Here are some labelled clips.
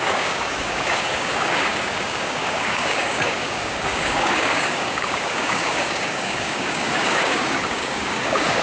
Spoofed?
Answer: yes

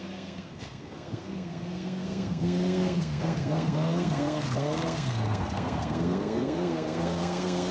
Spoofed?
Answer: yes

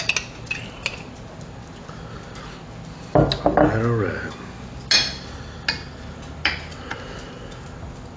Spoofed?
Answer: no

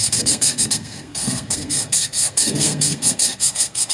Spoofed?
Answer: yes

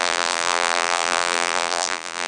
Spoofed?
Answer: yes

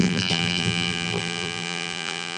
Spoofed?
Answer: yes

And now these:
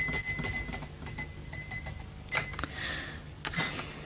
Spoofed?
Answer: no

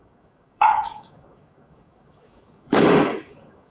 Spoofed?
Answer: yes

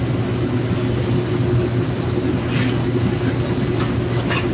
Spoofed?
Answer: no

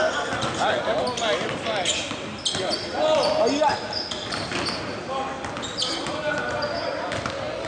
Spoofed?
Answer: no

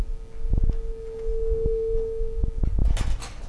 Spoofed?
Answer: no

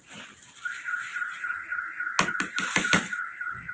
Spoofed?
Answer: no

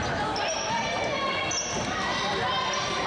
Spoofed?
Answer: no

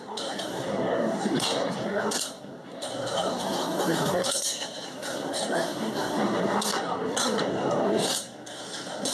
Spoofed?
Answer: yes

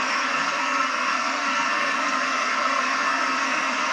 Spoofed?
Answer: yes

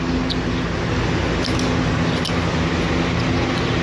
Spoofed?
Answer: no